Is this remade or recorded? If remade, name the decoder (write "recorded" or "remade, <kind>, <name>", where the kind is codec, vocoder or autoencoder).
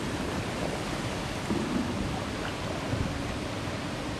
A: recorded